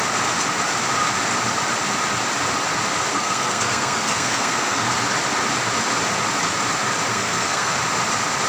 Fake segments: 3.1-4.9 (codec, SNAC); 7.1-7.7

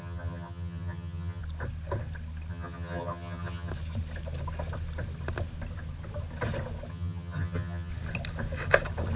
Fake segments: 0.0-1.4 (vocoder, HiFi-GAN); 2.5-3.7; 6.9-7.9